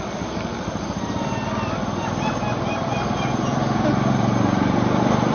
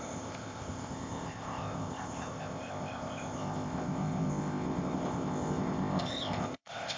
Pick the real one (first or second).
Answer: first